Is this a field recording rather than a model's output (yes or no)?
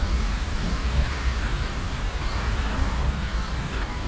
no